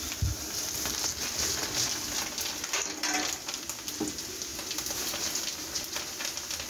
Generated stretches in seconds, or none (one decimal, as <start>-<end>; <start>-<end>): none